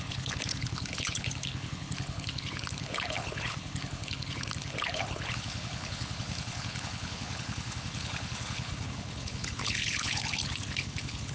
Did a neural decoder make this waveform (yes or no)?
yes